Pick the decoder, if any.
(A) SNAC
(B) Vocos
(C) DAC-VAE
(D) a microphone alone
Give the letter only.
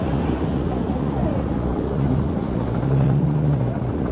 B